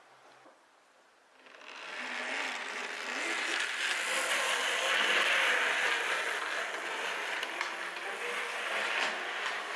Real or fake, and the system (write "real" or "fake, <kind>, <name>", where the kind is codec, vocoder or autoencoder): real